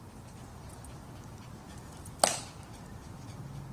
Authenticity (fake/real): real